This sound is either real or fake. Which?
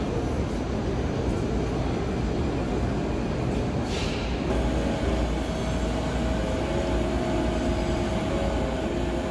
real